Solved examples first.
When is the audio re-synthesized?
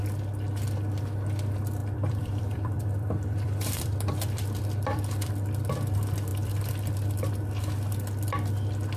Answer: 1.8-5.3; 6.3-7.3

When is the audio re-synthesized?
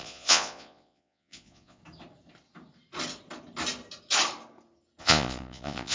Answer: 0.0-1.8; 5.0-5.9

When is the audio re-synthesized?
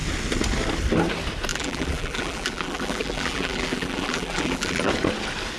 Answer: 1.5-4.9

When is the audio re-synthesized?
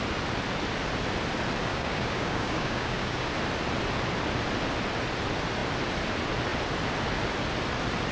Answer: 1.7-3.3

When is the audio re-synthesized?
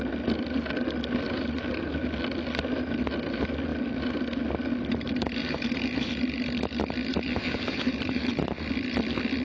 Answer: 5.4-6.4; 7.1-8.7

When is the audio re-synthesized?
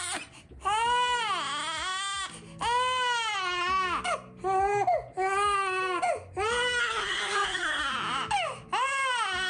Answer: 6.8-7.8